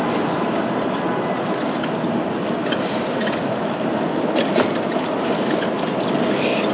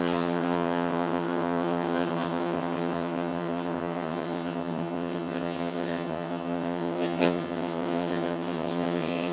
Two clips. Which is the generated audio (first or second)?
second